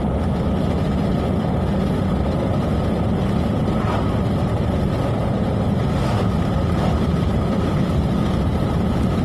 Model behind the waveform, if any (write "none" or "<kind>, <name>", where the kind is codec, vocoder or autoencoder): none